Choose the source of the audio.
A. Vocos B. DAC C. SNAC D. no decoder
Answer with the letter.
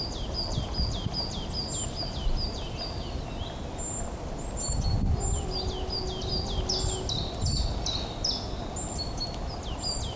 D